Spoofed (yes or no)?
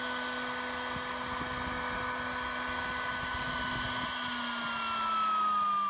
no